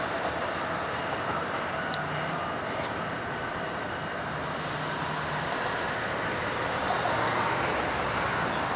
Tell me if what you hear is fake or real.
real